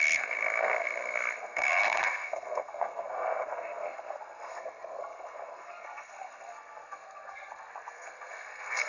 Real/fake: fake